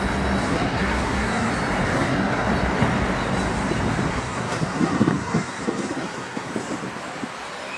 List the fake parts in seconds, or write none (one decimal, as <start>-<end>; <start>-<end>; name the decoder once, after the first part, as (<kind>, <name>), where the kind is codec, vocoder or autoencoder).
0.5-1.5 (codec, SNAC); 1.9-2.5; 4.1-6.5